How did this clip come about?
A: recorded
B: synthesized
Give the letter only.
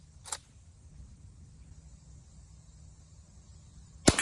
A